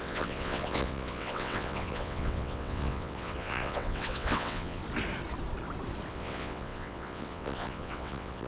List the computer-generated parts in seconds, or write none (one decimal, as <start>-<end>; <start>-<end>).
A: 0.0-4.8; 6.1-8.5